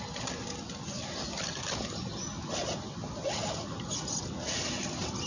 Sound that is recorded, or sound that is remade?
recorded